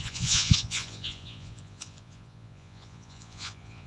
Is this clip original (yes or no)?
no